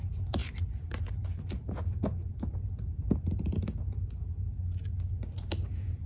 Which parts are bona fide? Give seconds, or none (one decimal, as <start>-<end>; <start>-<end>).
0.0-6.1